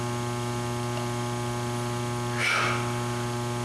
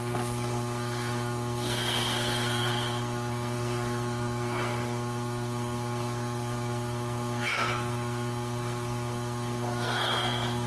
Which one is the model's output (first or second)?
second